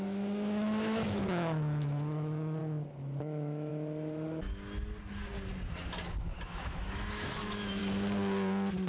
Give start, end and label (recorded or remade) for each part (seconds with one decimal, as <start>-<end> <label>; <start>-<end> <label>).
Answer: 0.0-2.6 remade; 2.6-3.2 recorded; 3.2-3.7 remade; 3.7-6.2 recorded; 6.2-7.8 remade; 7.8-8.9 recorded